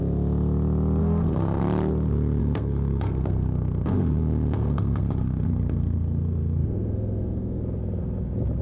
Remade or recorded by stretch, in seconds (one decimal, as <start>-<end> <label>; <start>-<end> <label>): 0.0-1.0 recorded; 1.0-1.6 remade; 1.6-2.4 recorded; 2.4-7.6 remade; 7.6-8.6 recorded